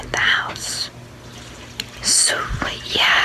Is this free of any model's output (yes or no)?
yes